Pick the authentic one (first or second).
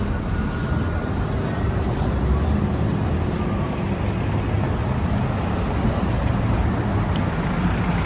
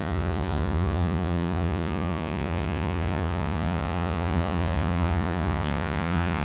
first